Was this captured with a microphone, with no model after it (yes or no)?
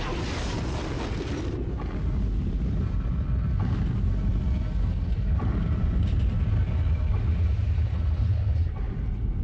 yes